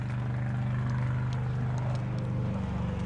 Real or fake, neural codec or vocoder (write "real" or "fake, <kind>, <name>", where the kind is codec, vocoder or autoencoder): real